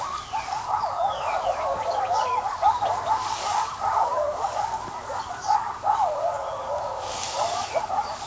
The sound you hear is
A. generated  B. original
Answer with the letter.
A